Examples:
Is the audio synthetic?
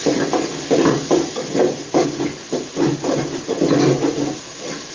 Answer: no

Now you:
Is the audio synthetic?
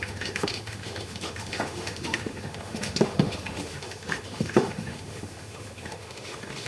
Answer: yes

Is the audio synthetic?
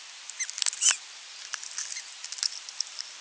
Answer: no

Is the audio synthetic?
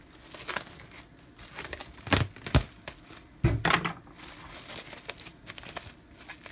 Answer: no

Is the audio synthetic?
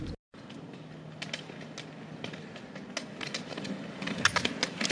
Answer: no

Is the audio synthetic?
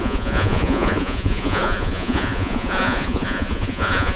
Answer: yes